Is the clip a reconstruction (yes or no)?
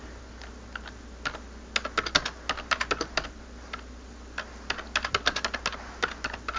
no